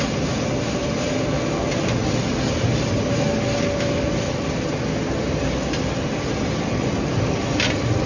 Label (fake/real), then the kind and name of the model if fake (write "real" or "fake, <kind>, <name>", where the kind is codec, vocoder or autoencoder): real